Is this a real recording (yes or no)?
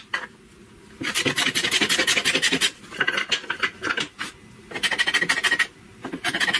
yes